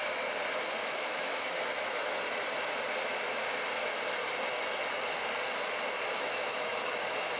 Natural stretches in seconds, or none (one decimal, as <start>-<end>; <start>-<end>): 0.0-0.8; 2.1-6.2